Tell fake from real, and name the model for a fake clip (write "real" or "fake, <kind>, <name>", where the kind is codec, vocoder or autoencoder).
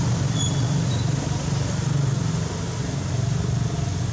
real